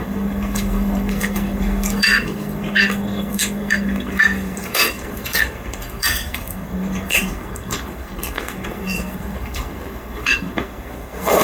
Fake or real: fake